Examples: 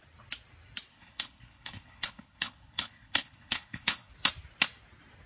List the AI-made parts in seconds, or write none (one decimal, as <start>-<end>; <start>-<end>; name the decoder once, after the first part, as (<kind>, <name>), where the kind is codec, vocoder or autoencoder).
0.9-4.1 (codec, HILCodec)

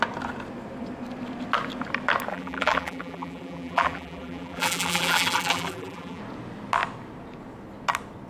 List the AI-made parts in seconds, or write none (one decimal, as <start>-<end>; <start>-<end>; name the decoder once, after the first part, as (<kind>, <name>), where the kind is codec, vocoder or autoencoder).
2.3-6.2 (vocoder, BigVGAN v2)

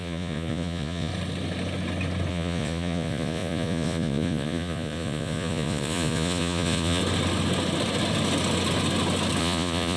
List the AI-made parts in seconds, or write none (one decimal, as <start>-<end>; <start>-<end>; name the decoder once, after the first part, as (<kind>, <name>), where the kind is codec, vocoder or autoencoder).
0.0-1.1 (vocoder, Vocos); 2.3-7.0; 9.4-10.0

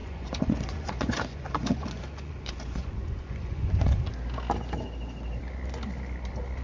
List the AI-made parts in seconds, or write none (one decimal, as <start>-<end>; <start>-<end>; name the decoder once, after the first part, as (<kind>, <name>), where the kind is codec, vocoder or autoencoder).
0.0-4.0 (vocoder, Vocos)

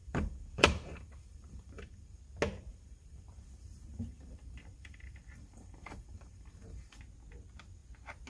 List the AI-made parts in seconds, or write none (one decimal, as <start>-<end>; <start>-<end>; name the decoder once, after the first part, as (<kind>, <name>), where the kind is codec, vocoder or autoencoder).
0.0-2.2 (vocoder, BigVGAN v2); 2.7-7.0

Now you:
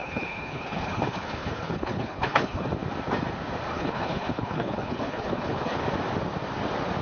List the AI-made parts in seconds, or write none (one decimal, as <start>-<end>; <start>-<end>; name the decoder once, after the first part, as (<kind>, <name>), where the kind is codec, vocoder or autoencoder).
0.0-2.7 (codec, HILCodec); 3.7-5.8

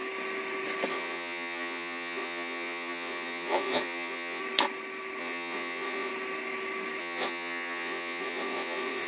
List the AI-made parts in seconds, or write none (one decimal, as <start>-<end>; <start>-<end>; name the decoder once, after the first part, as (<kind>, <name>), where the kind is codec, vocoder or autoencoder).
0.9-4.4 (vocoder, Vocos); 5.2-6.1; 7.0-9.1

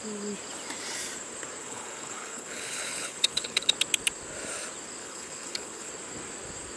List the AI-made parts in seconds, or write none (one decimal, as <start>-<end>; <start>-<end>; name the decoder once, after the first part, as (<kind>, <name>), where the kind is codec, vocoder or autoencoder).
1.6-3.7 (codec, HILCodec); 5.0-5.9